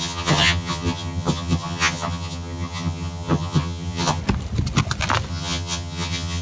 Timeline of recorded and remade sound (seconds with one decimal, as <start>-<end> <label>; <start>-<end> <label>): 0.0-4.2 remade; 4.2-5.3 recorded; 5.3-6.4 remade